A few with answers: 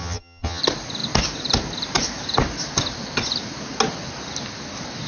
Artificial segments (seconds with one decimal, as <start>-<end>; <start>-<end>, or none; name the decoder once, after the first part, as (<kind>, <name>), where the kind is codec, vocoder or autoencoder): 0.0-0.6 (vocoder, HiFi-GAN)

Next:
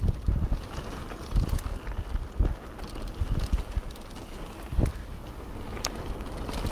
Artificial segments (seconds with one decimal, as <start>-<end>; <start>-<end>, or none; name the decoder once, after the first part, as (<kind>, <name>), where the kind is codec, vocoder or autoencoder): none

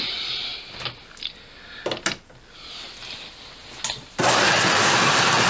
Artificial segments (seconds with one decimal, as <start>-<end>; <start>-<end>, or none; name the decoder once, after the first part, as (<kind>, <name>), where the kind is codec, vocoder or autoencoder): none

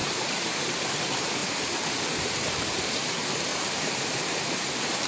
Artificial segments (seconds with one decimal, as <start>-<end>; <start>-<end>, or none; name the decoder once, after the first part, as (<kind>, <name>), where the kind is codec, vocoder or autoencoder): 0.0-5.1 (vocoder, BigVGAN v2)